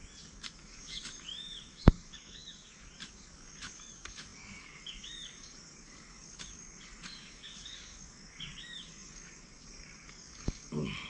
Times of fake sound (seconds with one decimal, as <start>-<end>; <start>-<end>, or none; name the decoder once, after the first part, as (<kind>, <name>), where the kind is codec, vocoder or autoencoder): 0.0-11.1 (codec, DAC)